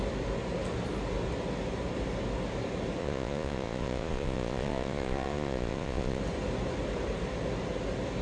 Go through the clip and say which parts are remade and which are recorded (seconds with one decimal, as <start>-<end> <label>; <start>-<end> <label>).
0.0-3.0 recorded; 3.0-6.2 remade; 6.2-8.2 recorded